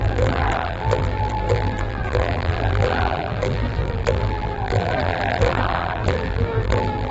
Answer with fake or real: fake